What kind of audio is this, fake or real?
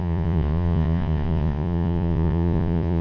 fake